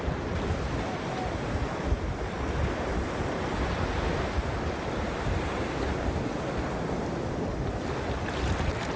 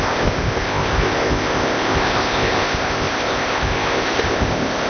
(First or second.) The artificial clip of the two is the second